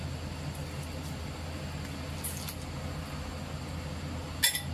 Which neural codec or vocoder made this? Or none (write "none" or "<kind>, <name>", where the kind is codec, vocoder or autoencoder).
none